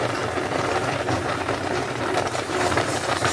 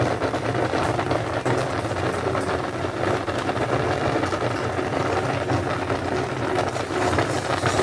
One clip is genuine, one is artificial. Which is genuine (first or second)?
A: second